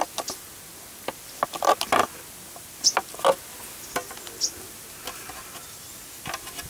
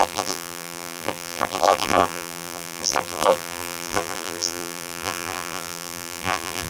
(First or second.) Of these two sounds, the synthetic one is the second